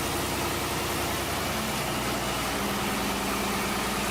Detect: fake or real real